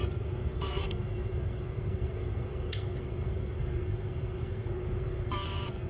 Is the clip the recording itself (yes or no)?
no